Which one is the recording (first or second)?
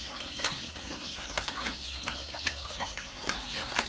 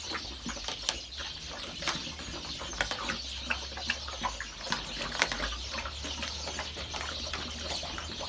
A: second